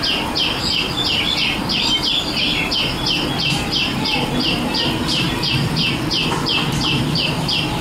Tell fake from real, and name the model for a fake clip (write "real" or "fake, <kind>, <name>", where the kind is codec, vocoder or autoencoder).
real